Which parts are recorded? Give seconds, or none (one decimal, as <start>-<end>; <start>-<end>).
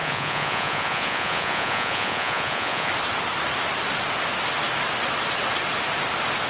2.9-6.5